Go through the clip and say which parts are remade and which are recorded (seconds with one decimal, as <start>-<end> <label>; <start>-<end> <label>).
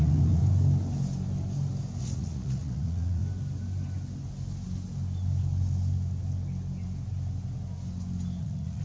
0.0-0.4 remade; 0.4-2.0 recorded; 2.0-3.2 remade; 3.2-8.4 recorded; 8.4-8.8 remade